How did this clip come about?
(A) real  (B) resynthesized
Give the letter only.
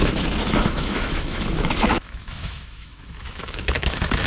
B